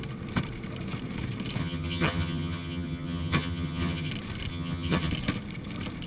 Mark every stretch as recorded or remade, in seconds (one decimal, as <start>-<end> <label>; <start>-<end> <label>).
0.0-1.6 recorded; 1.6-4.1 remade; 4.1-4.5 recorded; 4.5-5.1 remade; 5.1-6.1 recorded